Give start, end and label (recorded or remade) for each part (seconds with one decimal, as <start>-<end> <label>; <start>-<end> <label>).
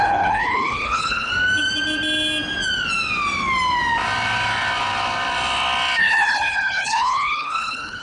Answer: 0.0-1.3 remade; 1.3-6.0 recorded; 6.0-8.0 remade